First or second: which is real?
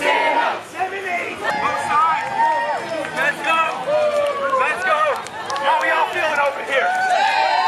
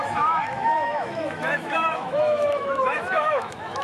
first